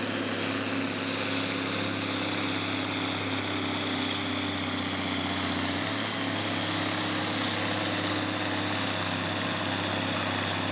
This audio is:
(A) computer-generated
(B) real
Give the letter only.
B